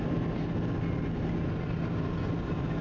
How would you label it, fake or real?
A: real